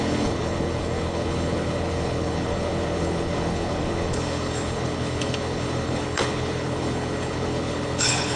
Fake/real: fake